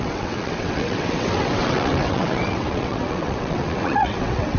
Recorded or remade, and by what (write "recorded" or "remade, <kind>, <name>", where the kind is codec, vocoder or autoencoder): remade, vocoder, WaveNeXt